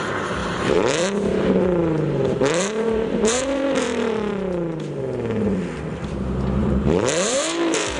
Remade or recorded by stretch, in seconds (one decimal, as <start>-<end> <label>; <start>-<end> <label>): 0.0-0.4 recorded; 0.4-5.0 remade; 5.0-6.6 recorded; 6.6-8.0 remade